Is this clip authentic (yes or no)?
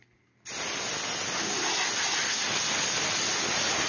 yes